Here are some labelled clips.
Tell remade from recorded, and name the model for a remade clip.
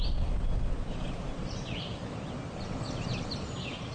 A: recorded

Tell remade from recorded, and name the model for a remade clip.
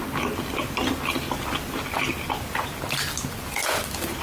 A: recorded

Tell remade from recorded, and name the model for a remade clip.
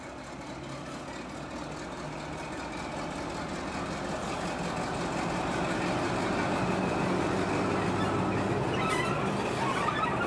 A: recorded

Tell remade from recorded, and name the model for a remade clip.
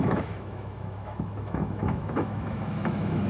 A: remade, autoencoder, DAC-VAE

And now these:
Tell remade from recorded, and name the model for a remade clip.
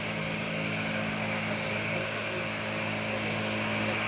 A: recorded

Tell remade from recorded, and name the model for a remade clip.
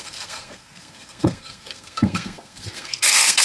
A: remade, codec, SNAC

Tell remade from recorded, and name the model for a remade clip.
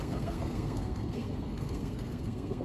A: remade, codec, SNAC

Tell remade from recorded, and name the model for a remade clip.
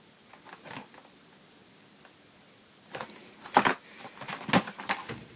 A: recorded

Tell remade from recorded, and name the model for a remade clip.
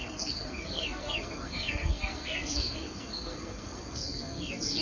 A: remade, codec, SNAC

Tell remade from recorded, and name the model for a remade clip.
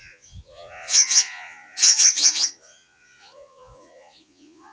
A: remade, vocoder, Vocos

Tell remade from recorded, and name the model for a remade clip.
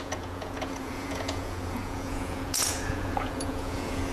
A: remade, vocoder, Vocos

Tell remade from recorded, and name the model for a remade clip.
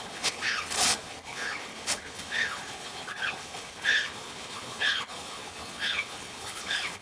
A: remade, codec, HILCodec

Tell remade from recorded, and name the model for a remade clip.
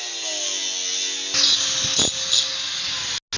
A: recorded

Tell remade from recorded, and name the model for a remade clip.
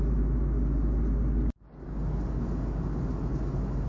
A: recorded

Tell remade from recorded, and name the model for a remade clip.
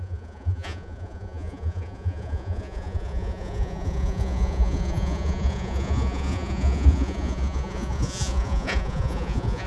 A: remade, vocoder, Vocos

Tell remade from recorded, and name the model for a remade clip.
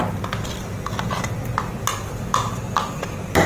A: recorded